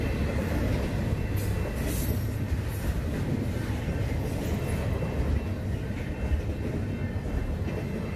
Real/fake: real